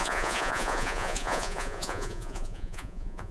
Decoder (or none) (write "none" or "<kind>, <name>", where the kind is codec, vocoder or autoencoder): vocoder, Vocos